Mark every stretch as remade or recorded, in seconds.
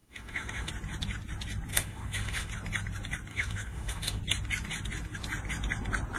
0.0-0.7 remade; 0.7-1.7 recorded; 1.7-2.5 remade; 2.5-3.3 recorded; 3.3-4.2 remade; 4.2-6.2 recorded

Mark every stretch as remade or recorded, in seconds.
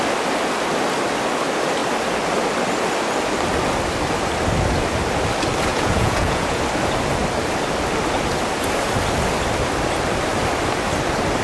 0.0-5.7 recorded; 5.7-6.6 remade; 6.6-11.4 recorded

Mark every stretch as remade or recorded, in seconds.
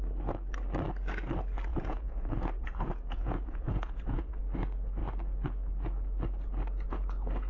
0.0-1.7 recorded; 1.7-4.3 remade; 4.3-7.5 recorded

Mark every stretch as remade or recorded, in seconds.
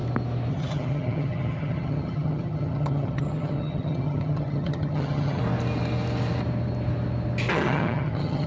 0.0-0.5 recorded; 0.5-5.4 remade; 5.4-7.5 recorded; 7.5-8.5 remade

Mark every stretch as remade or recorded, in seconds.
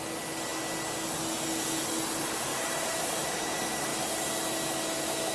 0.0-2.5 recorded; 2.5-3.0 remade; 3.0-5.3 recorded